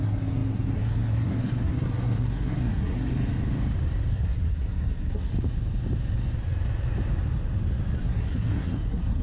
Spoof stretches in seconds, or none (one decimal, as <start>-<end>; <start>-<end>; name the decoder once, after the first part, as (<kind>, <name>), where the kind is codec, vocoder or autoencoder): 0.0-3.1 (codec, SNAC); 4.1-5.3; 8.0-9.2